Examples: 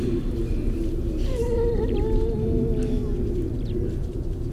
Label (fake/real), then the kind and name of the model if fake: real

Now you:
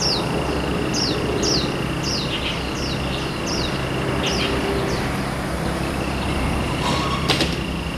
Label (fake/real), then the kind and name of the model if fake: real